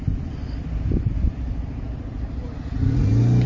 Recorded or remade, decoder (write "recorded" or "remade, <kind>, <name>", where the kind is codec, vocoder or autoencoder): recorded